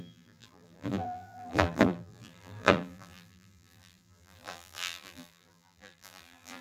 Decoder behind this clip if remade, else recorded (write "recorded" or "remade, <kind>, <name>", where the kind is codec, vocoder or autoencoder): remade, vocoder, BigVGAN v2